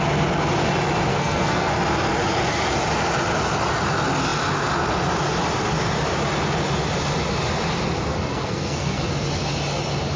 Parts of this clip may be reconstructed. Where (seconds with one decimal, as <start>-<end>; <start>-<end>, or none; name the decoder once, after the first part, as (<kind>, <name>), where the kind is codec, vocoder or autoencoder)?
1.1-1.7 (codec, SNAC); 8.1-9.1